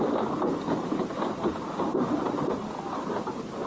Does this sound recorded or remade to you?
recorded